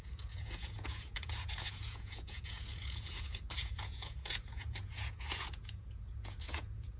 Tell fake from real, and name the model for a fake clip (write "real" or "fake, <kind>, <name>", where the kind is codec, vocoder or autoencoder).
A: fake, vocoder, Vocos